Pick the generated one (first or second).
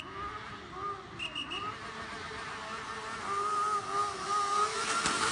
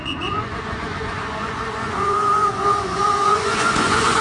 second